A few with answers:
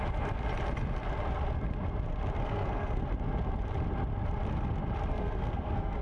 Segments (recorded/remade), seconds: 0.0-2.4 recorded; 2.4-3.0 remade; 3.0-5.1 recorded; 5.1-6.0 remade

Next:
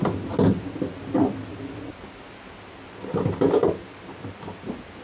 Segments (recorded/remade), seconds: 0.0-5.0 recorded

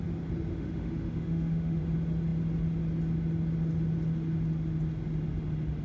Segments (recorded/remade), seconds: 0.0-0.5 recorded; 0.5-1.8 remade; 1.8-5.8 recorded

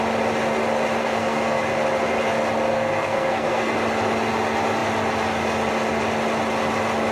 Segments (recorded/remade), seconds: 0.0-1.0 recorded; 1.0-1.6 remade; 1.6-2.7 recorded; 2.7-3.7 remade; 3.7-7.1 recorded

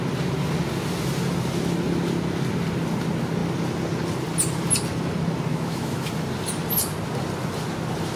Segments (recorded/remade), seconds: 0.0-5.5 recorded; 5.5-6.1 remade; 6.1-8.2 recorded

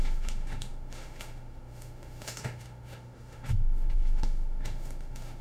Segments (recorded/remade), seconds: 0.0-5.4 remade

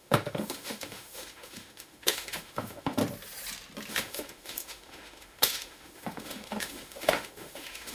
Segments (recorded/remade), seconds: 0.0-3.0 remade; 3.0-3.9 recorded; 3.9-7.9 remade